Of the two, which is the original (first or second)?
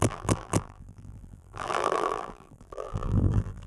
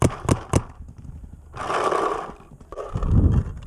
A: second